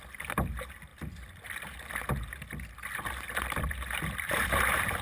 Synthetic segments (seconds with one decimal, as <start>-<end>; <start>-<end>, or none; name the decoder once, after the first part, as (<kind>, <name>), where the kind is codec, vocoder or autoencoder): 0.0-0.9 (vocoder, BigVGAN v2); 3.3-5.0